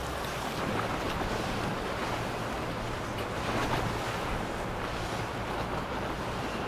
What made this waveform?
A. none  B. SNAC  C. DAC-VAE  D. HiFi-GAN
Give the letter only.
A